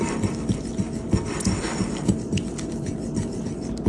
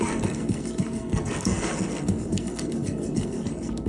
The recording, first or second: first